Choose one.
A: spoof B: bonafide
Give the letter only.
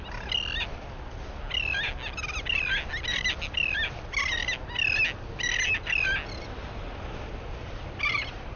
B